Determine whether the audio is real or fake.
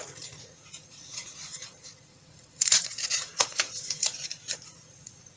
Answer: fake